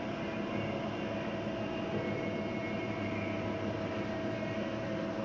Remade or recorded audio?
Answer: recorded